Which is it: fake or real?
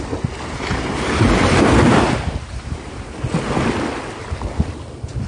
real